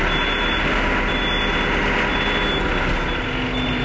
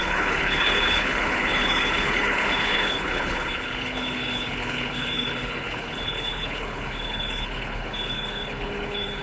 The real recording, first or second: first